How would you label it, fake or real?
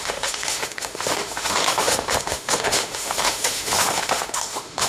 fake